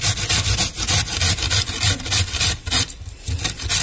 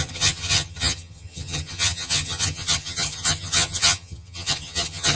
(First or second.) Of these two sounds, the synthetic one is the second